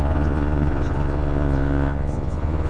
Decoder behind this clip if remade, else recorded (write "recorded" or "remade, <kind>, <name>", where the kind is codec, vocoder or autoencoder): remade, vocoder, Vocos